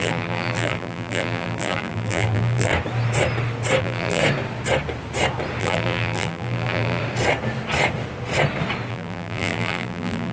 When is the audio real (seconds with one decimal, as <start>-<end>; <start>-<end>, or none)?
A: 2.7-3.8; 4.2-5.6; 7.0-8.9

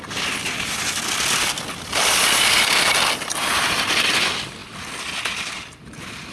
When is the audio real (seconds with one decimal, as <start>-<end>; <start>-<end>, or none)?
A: 0.0-6.3

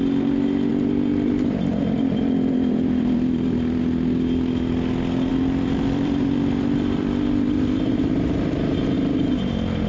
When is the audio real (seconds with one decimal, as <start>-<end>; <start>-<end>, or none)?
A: 0.0-0.7; 3.8-5.3; 9.3-9.9

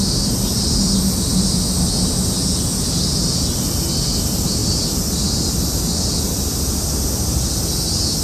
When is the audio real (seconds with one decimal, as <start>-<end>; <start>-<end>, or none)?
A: 0.0-8.2

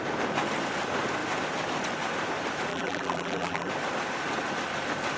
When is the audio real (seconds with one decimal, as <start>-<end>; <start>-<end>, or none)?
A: 0.0-2.7; 3.7-5.2

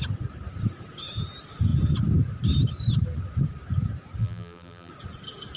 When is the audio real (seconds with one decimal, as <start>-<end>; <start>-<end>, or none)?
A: 0.0-4.2; 4.9-5.6

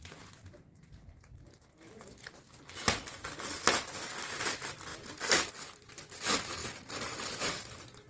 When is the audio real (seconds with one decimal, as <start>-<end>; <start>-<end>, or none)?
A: 2.4-6.6; 7.5-8.1

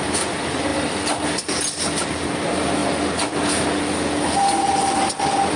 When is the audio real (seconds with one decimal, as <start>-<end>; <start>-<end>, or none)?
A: 0.0-5.6